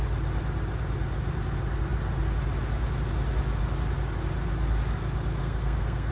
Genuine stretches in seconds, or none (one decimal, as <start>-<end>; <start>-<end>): 0.0-5.4